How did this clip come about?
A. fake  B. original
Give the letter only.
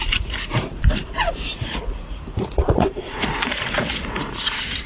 A